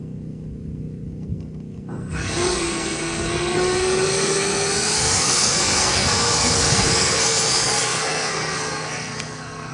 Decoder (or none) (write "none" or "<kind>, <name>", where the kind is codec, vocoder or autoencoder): codec, SNAC